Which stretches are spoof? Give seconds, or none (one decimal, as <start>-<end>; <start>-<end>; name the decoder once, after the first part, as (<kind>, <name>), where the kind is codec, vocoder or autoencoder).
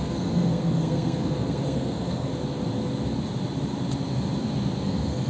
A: 0.0-2.3 (codec, SNAC); 4.8-5.3